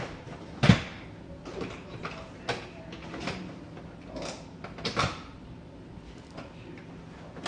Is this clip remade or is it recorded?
recorded